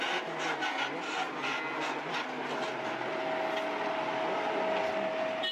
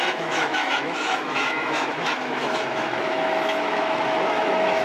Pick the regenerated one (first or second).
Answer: second